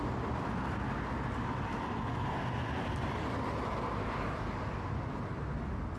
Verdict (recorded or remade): recorded